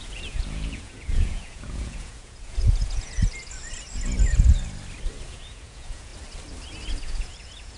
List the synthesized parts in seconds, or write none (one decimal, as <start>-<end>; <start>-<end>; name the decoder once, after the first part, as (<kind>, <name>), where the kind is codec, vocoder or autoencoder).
0.0-3.2 (vocoder, Vocos); 5.3-6.1; 7.0-7.8